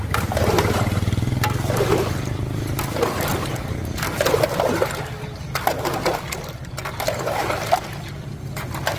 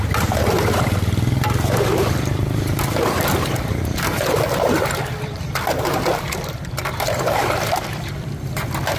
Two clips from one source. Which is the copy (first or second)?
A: second